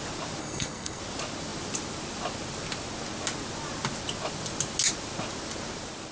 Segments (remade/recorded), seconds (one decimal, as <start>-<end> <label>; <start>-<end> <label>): 0.0-0.4 recorded; 0.4-1.0 remade; 1.0-6.1 recorded